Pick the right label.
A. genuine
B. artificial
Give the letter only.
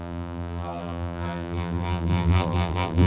B